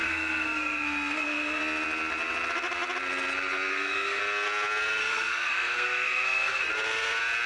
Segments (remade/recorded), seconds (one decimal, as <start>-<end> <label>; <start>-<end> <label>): 0.0-1.6 remade; 1.6-3.7 recorded; 3.7-4.2 remade; 4.2-5.0 recorded; 5.0-6.7 remade; 6.7-7.5 recorded